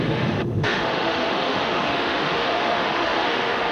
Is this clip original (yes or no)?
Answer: no